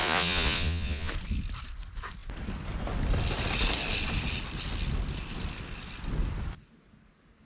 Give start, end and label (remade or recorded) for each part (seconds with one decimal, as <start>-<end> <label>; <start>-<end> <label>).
0.0-1.1 remade; 1.1-7.5 recorded